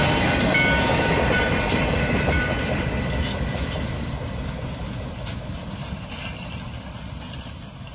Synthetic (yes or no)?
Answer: no